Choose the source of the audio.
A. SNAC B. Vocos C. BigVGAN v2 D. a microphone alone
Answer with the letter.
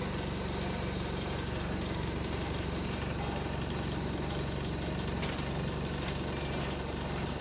C